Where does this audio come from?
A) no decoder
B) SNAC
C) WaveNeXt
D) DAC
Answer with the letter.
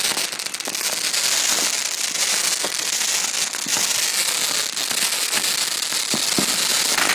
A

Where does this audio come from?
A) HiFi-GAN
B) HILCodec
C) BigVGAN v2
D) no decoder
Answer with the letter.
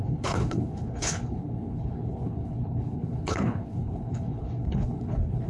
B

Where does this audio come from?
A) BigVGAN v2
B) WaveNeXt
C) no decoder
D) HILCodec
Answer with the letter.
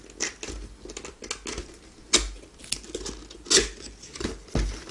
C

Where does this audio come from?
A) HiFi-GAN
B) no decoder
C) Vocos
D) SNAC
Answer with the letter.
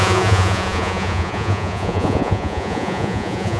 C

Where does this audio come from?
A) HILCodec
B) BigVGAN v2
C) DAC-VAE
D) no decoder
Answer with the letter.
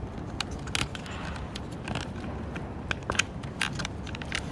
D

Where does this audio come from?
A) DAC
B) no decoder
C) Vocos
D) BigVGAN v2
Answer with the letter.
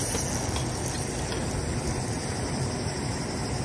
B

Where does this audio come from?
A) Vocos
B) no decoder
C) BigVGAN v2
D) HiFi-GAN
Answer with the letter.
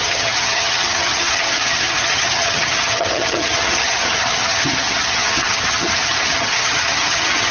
D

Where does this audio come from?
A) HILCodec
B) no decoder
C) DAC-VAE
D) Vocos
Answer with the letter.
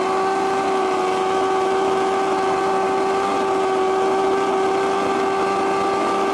B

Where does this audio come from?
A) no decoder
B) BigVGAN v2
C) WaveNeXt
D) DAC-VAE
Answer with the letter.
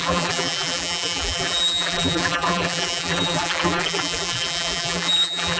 B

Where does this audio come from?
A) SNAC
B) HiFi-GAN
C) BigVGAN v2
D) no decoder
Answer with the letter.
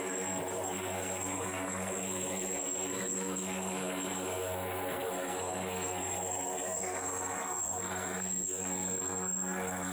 A